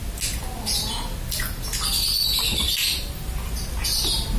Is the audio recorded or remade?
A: recorded